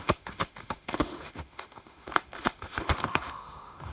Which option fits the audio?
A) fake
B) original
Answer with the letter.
A